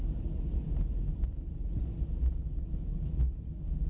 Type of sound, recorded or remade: recorded